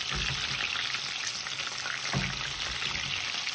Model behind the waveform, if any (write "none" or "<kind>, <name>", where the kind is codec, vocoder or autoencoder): none